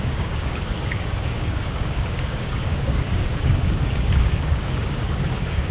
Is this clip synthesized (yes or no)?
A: yes